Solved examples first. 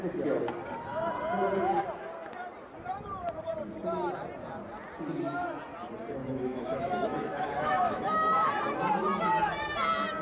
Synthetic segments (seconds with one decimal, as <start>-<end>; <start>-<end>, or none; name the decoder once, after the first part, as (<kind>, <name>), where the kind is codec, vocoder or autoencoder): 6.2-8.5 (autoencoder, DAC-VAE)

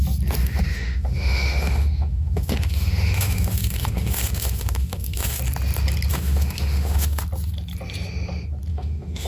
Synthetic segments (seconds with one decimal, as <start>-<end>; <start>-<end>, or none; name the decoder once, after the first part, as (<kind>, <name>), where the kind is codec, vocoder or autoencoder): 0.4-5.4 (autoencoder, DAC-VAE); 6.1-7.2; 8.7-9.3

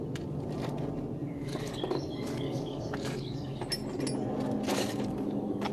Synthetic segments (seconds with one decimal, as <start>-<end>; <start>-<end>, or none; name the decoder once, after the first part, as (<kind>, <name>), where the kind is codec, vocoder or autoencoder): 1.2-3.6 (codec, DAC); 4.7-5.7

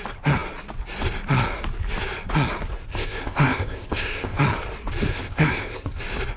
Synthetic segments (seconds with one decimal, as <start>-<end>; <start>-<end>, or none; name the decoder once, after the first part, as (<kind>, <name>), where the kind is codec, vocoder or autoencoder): 2.9-4.4 (codec, ZipCodec); 5.1-6.0